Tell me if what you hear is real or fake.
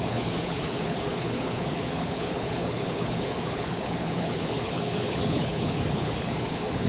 fake